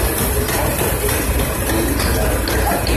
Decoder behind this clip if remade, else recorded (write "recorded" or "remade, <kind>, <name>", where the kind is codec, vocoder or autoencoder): recorded